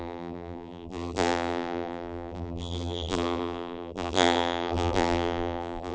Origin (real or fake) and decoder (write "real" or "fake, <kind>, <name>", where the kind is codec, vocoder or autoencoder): fake, vocoder, BigVGAN v2